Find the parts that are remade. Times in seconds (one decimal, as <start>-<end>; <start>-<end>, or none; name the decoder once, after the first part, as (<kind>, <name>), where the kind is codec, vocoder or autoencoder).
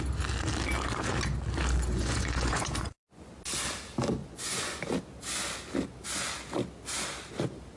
1.9-3.3 (vocoder, Vocos); 4.2-4.8